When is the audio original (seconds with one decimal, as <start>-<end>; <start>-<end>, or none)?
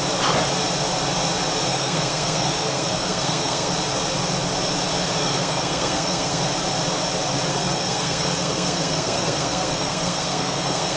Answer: 0.0-1.7; 3.7-5.2; 6.4-7.5